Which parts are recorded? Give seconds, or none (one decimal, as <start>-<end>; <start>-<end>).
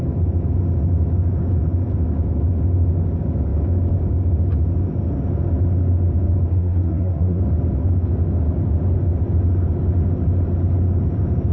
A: 0.0-6.5; 7.4-11.5